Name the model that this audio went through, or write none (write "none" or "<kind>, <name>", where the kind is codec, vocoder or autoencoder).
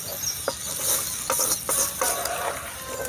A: none